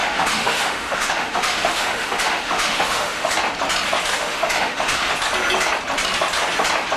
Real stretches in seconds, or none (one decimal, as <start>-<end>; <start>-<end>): 3.3-4.1; 5.1-7.0